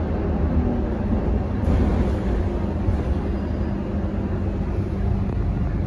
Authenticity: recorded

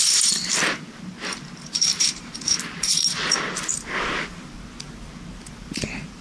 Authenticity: remade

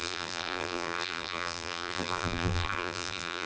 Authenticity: remade